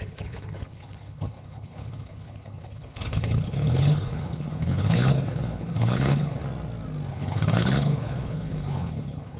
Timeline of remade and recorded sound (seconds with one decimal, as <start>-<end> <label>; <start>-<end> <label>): 0.0-6.4 remade; 6.4-7.1 recorded; 7.1-9.4 remade